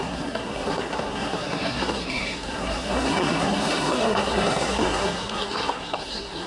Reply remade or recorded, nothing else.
remade